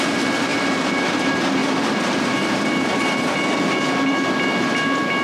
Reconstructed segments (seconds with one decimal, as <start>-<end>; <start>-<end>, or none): 0.5-1.2; 1.6-4.2